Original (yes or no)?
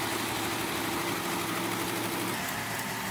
yes